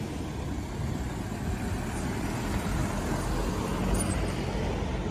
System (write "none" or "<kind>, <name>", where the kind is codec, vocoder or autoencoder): none